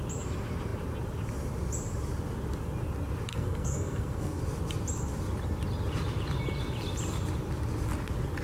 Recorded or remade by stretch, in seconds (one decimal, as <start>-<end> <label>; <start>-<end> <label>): 0.0-3.3 recorded; 3.3-4.4 remade; 4.4-8.4 recorded